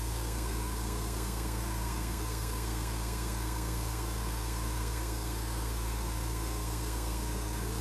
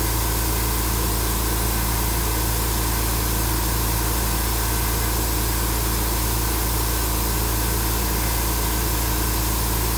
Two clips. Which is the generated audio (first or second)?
first